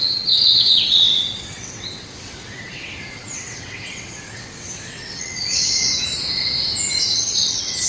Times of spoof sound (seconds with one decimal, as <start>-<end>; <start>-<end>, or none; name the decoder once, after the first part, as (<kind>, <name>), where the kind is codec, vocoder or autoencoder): 0.0-5.8 (vocoder, WaveNeXt); 7.0-7.9